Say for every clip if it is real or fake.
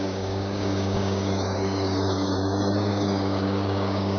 fake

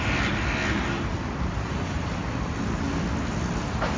real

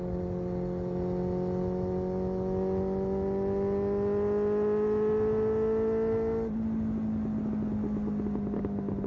real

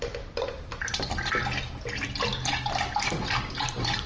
real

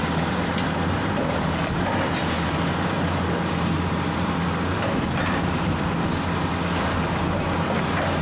real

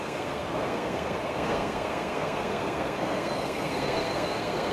fake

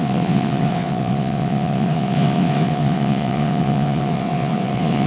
fake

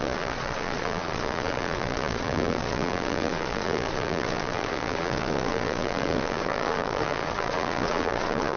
fake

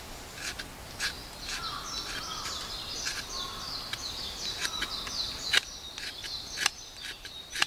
real